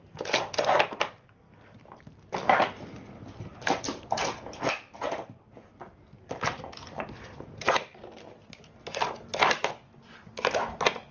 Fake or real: real